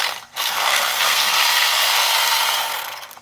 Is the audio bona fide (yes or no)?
no